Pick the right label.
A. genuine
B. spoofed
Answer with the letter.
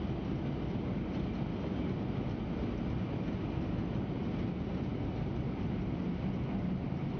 A